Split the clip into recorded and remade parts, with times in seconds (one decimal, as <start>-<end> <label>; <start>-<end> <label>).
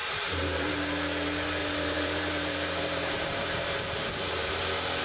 0.0-0.7 remade; 0.7-1.6 recorded; 1.6-4.6 remade; 4.6-5.0 recorded